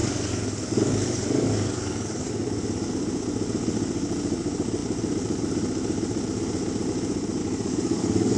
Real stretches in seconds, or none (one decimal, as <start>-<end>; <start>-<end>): 2.3-7.4